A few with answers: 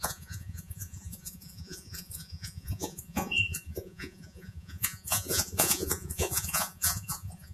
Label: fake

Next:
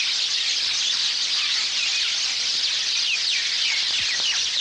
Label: real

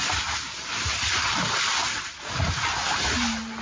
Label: real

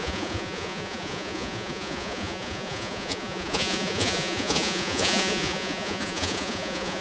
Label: fake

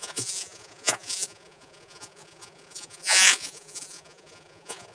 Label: fake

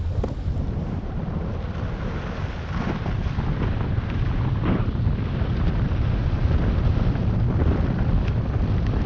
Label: real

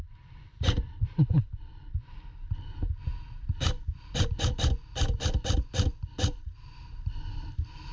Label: real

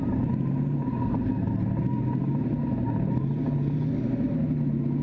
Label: real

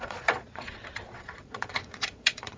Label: fake